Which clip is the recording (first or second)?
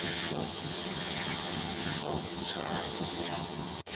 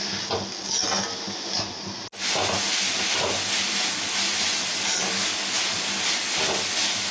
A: second